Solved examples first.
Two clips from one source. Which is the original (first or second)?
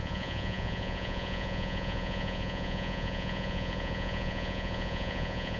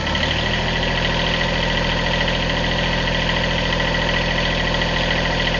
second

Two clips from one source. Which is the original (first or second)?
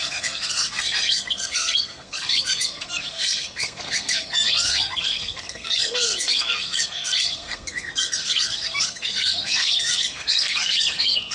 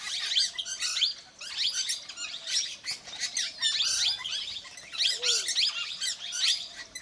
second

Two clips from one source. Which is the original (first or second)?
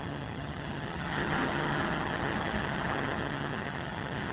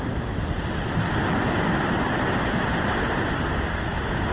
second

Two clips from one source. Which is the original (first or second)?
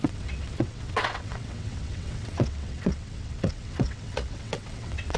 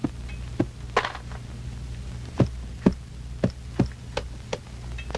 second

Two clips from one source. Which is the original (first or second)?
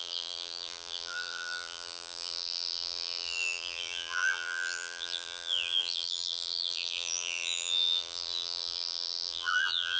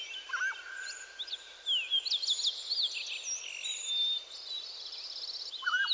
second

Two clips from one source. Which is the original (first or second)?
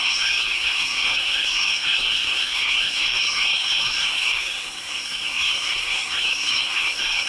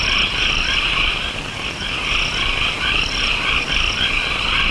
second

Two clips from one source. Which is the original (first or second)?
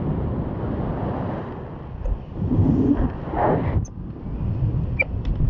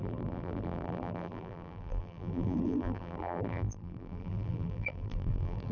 first